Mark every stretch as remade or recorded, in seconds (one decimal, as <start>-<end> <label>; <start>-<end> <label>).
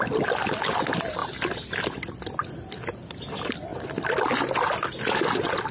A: 0.0-5.7 recorded